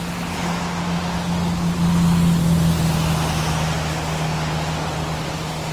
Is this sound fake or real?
real